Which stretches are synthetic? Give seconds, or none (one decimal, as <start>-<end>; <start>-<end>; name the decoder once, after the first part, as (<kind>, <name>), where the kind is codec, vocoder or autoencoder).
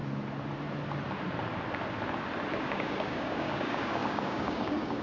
2.6-5.0 (codec, DAC)